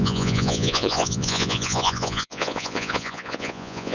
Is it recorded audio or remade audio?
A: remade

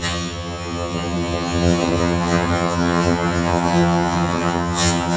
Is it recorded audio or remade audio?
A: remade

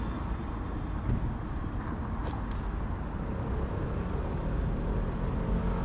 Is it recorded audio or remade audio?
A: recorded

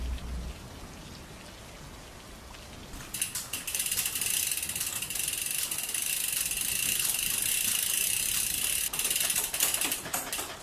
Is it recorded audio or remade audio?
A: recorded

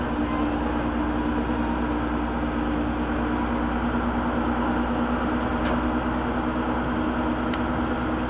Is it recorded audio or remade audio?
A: recorded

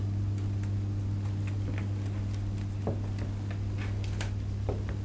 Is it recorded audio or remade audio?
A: recorded